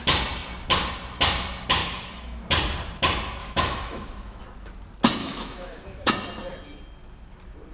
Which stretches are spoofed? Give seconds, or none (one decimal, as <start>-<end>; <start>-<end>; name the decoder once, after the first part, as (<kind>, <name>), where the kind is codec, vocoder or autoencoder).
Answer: 1.8-2.4 (autoencoder, DAC-VAE); 3.4-4.4; 5.2-6.1